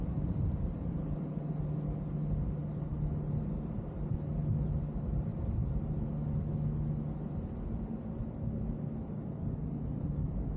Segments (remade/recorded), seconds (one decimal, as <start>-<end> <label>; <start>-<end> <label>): 0.0-10.6 recorded